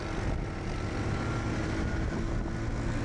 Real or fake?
real